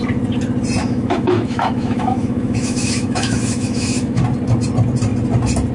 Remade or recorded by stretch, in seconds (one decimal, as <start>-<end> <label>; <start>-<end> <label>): 0.0-0.8 recorded; 0.8-4.2 remade; 4.2-5.7 recorded